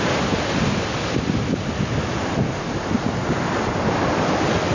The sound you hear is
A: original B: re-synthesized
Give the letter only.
A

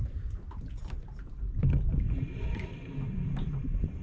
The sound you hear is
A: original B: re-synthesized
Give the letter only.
B